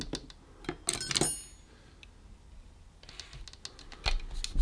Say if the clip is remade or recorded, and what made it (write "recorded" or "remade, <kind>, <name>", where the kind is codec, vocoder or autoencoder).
recorded